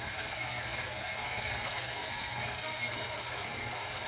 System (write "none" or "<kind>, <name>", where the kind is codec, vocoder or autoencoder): codec, SNAC